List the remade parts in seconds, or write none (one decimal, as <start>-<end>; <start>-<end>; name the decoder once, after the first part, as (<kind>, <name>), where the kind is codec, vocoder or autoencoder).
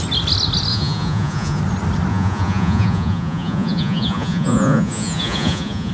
0.7-1.6 (vocoder, Vocos); 2.1-5.9